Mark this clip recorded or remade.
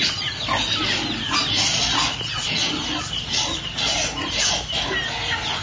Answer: recorded